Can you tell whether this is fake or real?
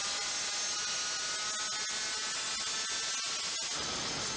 real